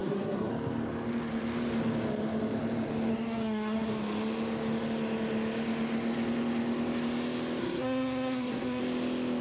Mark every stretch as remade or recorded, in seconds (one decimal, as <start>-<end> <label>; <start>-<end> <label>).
0.0-0.5 remade; 0.5-3.1 recorded; 3.1-3.9 remade; 3.9-7.6 recorded; 7.6-8.8 remade; 8.8-9.4 recorded